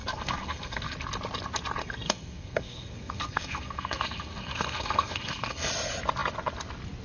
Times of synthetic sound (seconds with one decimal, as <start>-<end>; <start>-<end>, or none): 0.0-0.9; 1.8-5.7